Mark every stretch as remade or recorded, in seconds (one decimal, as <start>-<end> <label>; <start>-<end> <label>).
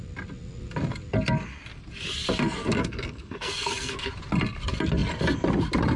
0.0-2.6 recorded; 2.6-4.1 remade; 4.1-6.0 recorded